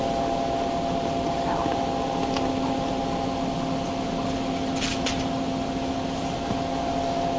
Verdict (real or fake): real